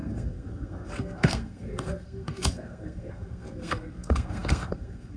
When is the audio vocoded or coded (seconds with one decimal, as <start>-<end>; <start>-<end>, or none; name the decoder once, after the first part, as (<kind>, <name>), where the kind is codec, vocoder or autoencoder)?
0.0-5.2 (codec, SNAC)